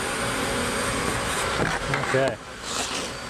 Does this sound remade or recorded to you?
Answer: recorded